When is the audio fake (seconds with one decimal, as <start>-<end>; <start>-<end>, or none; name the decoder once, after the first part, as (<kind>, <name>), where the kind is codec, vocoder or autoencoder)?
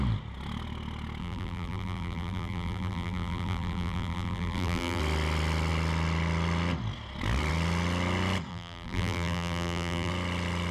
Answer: 1.2-5.0 (vocoder, BigVGAN v2); 8.5-10.1